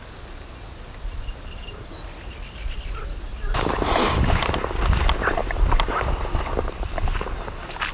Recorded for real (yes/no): yes